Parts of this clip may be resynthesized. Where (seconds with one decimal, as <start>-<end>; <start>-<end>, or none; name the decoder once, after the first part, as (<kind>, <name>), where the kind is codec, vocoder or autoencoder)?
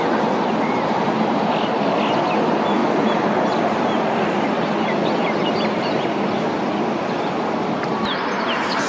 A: none